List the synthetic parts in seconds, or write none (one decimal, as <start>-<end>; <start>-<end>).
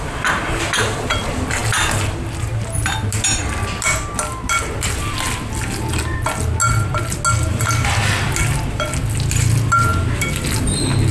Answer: none